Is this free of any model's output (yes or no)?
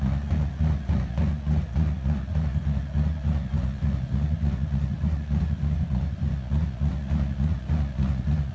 no